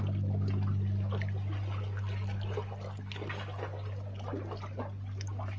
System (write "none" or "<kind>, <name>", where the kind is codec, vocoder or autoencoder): none